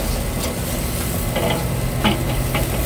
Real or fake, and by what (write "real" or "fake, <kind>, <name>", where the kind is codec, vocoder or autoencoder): real